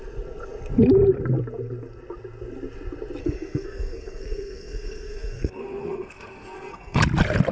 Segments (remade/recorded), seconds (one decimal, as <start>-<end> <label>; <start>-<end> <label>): 0.0-3.2 recorded; 3.2-7.0 remade; 7.0-7.5 recorded